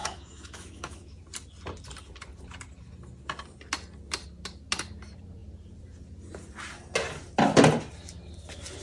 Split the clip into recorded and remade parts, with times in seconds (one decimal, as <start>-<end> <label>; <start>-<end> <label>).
0.0-1.2 remade; 1.2-8.8 recorded